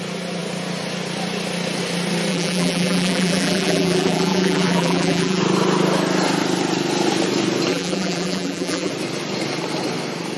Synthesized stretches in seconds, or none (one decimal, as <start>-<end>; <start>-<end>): 2.3-5.4; 7.7-8.9